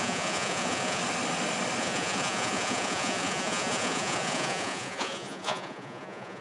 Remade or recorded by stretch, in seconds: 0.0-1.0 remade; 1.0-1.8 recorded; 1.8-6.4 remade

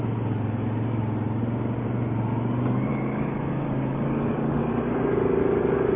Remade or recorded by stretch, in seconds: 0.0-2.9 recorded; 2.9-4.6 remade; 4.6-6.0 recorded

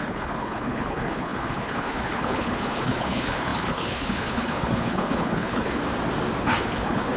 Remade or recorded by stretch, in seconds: 0.0-5.8 remade; 5.8-6.4 recorded; 6.4-7.2 remade

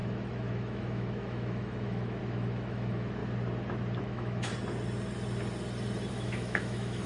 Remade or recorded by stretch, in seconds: 0.0-3.2 remade; 3.2-4.0 recorded; 4.0-4.5 remade; 4.5-6.1 recorded; 6.1-7.1 remade

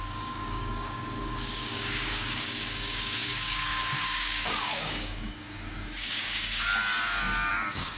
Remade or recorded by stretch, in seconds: 0.0-8.0 remade

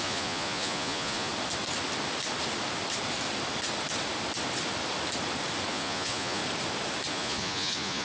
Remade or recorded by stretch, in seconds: 0.0-1.3 remade; 1.3-5.7 recorded; 5.7-6.4 remade; 6.4-7.1 recorded; 7.1-8.0 remade

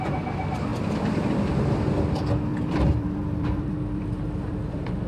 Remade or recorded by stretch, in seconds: 0.0-2.5 recorded; 2.5-5.1 remade

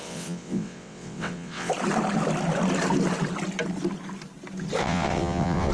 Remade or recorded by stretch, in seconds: 0.0-1.7 remade; 1.7-4.8 recorded; 4.8-5.7 remade